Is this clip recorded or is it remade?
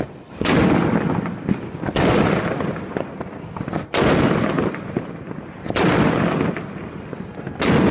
recorded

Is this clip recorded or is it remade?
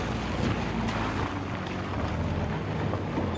recorded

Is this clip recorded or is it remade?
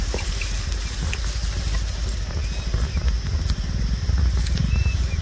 recorded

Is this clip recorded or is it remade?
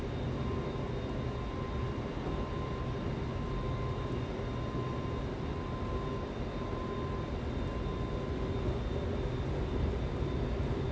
recorded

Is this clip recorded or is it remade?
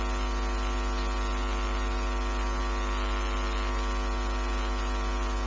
recorded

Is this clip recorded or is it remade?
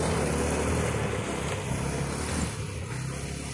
recorded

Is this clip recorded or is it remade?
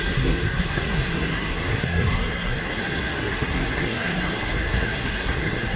remade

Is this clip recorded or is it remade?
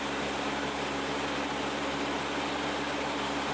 recorded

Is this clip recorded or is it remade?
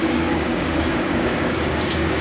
remade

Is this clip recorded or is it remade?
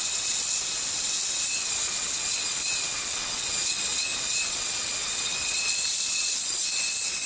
remade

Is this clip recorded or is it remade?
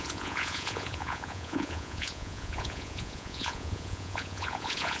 remade